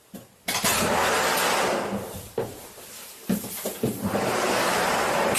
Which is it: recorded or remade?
recorded